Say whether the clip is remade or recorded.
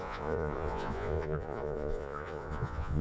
remade